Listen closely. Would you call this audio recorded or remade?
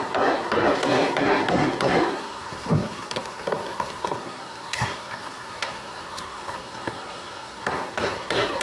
remade